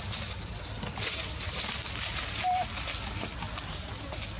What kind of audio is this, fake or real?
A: real